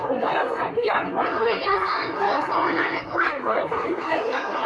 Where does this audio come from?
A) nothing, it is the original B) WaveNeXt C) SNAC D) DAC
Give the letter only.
C